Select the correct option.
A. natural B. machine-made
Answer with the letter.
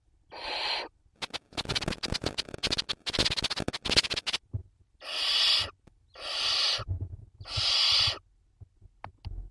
A